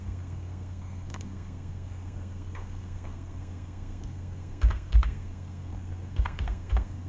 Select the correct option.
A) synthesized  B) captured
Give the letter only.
A